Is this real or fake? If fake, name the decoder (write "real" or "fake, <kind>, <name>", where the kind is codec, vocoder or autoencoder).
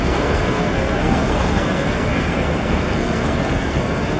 fake, codec, SNAC